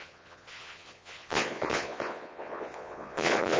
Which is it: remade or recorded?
remade